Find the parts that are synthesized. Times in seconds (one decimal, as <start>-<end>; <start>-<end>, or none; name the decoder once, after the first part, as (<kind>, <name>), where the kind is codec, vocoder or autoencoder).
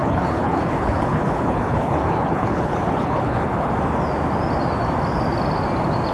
0.0-3.7 (codec, HILCodec)